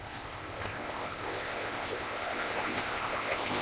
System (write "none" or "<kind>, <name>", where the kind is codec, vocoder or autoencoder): codec, ZipCodec